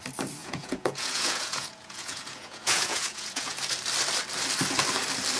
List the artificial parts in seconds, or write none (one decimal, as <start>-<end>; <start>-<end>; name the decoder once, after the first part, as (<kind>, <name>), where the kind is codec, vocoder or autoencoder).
0.4-3.6 (vocoder, Vocos)